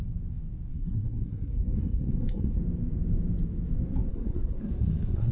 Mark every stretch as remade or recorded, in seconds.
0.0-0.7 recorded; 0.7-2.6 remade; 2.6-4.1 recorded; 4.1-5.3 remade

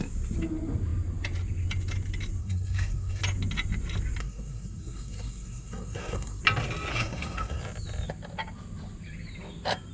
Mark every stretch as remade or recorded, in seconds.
0.0-2.4 recorded; 2.4-3.2 remade; 3.2-4.2 recorded; 4.2-6.4 remade; 6.4-6.9 recorded; 6.9-7.6 remade; 7.6-9.9 recorded

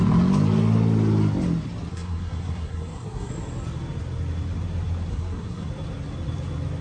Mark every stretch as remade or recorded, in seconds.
0.0-1.9 recorded; 1.9-3.3 remade; 3.3-5.1 recorded; 5.1-5.7 remade; 5.7-6.8 recorded

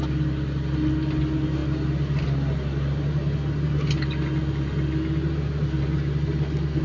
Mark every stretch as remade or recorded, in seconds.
0.0-6.8 recorded